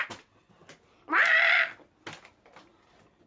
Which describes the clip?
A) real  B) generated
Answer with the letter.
A